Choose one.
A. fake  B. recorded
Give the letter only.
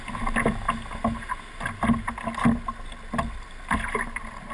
B